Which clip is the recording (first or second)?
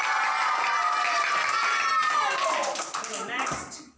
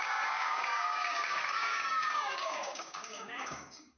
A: first